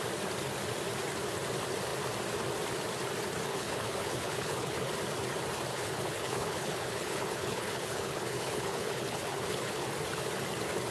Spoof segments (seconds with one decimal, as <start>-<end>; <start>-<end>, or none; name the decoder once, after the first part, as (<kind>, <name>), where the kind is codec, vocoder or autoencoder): 3.5-4.9 (codec, HILCodec); 5.7-9.9